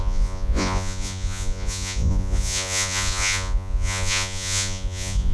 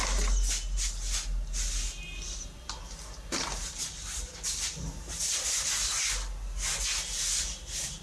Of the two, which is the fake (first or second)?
first